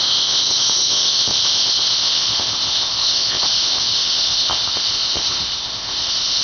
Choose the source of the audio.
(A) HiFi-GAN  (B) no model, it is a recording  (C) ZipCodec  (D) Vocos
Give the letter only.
C